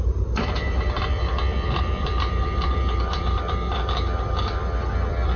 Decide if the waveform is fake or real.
fake